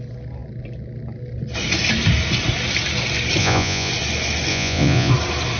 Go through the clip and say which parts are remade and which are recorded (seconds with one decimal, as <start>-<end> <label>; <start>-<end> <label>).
0.0-3.4 recorded; 3.4-3.9 remade; 3.9-4.5 recorded; 4.5-5.1 remade; 5.1-5.6 recorded